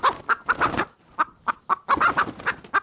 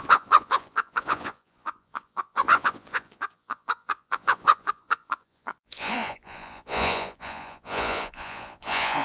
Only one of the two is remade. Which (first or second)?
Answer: second